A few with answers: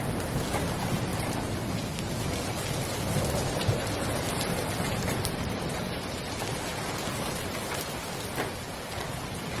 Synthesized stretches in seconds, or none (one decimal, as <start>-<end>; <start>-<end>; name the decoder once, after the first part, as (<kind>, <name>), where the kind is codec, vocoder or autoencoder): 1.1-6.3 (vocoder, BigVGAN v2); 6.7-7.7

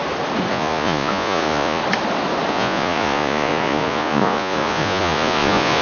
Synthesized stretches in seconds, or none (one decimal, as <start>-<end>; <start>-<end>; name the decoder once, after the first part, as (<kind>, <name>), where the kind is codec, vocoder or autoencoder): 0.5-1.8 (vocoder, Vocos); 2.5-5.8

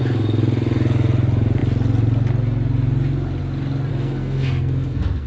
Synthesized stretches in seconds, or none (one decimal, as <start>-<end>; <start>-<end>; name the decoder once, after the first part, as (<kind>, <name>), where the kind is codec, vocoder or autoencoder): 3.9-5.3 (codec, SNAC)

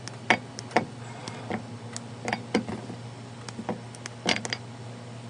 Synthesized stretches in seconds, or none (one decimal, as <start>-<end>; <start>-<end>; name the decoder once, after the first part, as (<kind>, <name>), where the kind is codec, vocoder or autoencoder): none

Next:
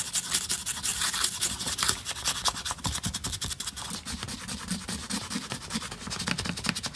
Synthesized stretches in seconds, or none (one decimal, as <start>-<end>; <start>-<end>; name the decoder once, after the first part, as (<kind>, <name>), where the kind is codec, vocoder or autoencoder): 0.9-4.5 (vocoder, BigVGAN v2); 5.0-5.8

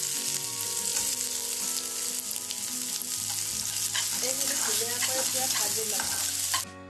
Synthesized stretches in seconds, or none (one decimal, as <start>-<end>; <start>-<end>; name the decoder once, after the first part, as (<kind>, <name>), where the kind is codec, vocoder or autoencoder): none

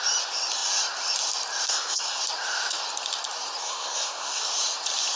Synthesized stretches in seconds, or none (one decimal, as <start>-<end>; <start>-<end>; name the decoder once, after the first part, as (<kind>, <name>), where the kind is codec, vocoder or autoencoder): 1.7-2.2 (codec, SNAC); 3.6-4.4

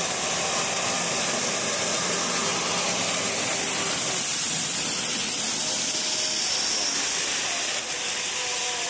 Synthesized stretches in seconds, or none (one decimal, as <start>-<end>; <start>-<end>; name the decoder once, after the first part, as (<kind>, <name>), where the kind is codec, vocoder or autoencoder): none